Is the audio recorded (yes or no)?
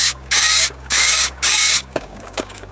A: no